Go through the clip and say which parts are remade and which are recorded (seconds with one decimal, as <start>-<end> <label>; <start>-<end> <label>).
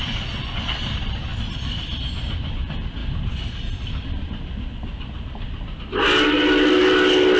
0.0-7.4 recorded